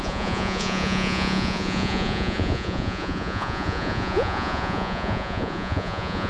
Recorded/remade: remade